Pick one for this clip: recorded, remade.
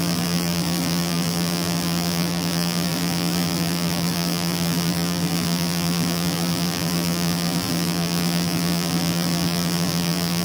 remade